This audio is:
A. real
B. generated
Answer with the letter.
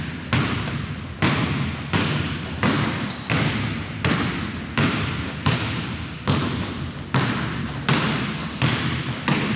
A